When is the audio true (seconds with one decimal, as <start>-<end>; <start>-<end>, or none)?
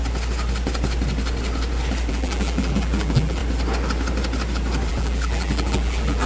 0.0-2.1; 3.4-4.9